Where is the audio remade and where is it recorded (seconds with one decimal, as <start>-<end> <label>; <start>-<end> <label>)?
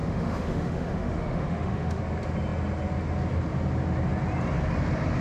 0.0-2.0 remade; 2.0-5.2 recorded